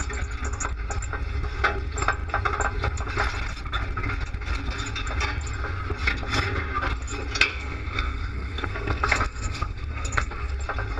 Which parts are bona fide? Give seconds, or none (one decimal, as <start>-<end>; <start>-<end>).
0.0-7.5; 10.5-11.0